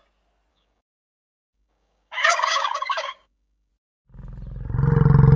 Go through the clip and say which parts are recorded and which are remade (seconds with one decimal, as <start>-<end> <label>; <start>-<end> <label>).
0.0-0.5 recorded; 0.5-3.7 remade; 3.7-5.4 recorded